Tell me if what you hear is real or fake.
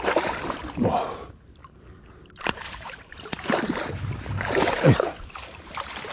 fake